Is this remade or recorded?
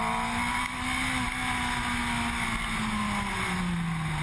recorded